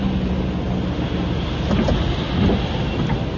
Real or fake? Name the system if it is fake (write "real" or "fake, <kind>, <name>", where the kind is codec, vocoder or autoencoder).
real